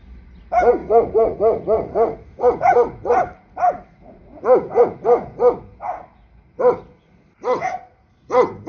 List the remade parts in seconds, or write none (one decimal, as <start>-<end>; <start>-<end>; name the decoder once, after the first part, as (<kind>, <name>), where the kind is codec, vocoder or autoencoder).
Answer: 0.8-4.8 (vocoder, Vocos)